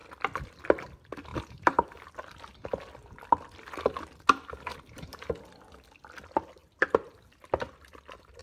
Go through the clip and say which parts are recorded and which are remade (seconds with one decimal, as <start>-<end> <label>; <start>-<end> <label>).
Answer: 0.0-1.3 recorded; 1.3-2.1 remade; 2.1-4.7 recorded; 4.7-5.3 remade; 5.3-8.4 recorded